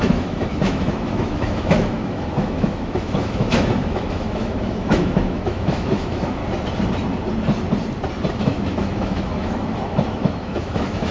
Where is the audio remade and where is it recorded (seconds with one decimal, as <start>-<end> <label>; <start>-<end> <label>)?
0.0-6.4 remade; 6.4-8.3 recorded; 8.3-11.1 remade